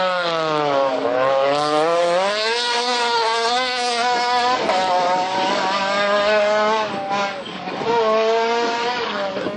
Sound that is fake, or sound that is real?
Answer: fake